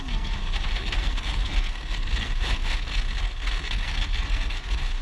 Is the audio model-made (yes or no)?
yes